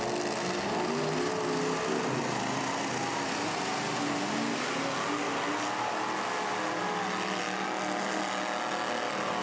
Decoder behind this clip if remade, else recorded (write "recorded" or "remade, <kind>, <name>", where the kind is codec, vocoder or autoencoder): recorded